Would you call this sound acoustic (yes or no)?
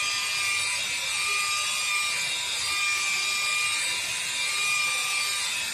yes